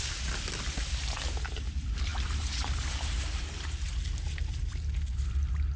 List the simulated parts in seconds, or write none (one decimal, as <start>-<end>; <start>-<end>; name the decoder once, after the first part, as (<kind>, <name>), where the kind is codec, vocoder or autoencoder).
none